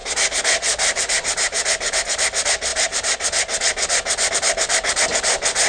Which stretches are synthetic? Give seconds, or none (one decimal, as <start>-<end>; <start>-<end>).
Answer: 1.0-2.7; 4.3-5.7